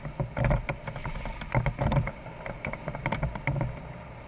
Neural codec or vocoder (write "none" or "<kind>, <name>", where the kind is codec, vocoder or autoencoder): none